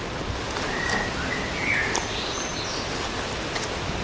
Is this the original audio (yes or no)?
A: yes